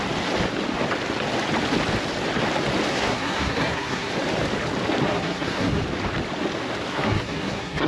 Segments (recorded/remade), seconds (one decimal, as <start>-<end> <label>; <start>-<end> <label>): 0.0-2.9 recorded; 2.9-4.1 remade; 4.1-5.1 recorded; 5.1-5.8 remade; 5.8-6.9 recorded; 6.9-7.9 remade